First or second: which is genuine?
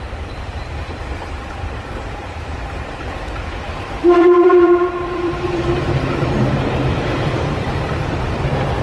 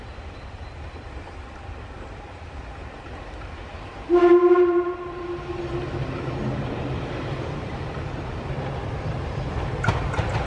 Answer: second